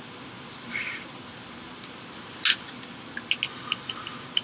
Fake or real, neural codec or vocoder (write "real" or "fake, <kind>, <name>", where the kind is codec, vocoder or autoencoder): real